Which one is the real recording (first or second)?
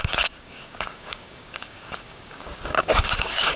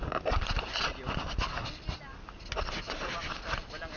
second